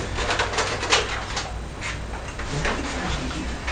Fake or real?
real